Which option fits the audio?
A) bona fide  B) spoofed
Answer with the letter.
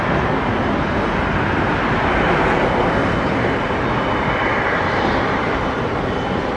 A